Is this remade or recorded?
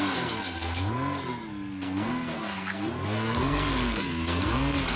remade